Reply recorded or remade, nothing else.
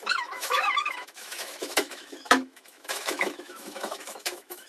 remade